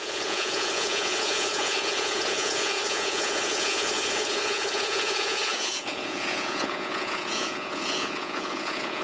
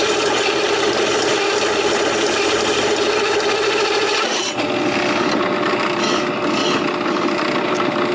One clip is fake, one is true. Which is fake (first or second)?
first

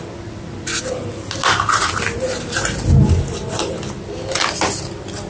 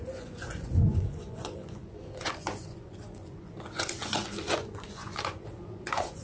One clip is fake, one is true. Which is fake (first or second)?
second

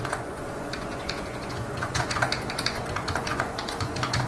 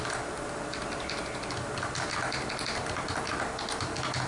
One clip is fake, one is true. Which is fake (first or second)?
first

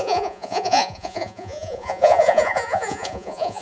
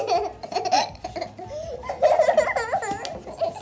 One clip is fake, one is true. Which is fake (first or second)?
first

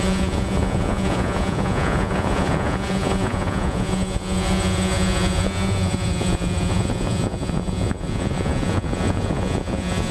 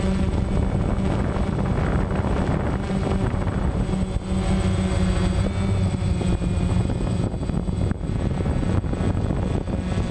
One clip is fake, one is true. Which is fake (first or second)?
first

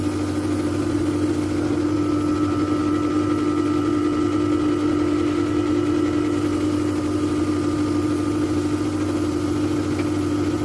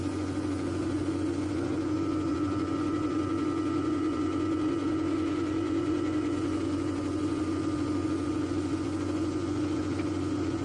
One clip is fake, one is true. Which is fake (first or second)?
second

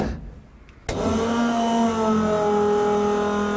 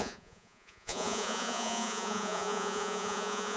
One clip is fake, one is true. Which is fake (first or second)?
second